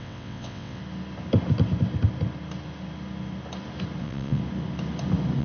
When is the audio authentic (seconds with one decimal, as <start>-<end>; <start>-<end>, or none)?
0.8-4.0; 4.4-5.4